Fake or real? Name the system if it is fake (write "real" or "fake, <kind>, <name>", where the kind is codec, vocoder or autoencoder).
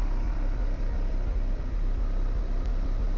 fake, vocoder, BigVGAN v2